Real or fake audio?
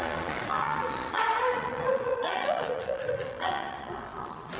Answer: fake